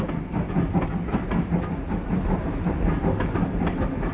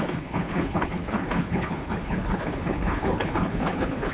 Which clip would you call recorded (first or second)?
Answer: first